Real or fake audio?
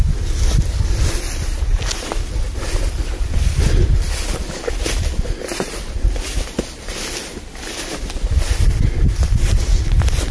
real